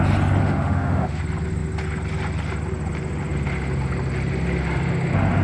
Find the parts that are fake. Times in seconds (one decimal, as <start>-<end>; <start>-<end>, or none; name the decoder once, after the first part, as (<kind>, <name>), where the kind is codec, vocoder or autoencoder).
0.4-1.2 (autoencoder, DAC-VAE)